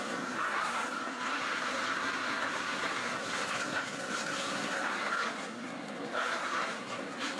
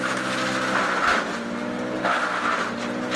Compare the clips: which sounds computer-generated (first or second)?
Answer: first